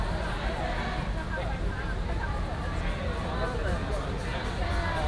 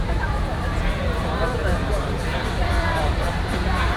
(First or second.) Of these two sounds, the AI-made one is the second